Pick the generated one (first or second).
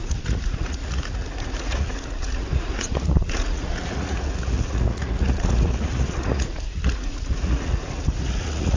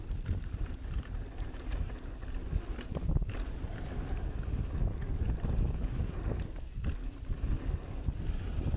first